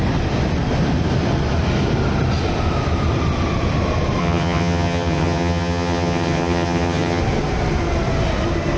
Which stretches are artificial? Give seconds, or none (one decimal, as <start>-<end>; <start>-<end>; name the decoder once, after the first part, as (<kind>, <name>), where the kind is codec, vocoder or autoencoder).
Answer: 4.2-7.2 (vocoder, HiFi-GAN)